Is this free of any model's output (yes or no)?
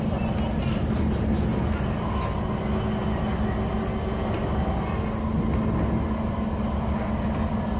yes